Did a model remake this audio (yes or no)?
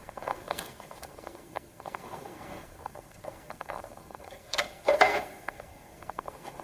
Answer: yes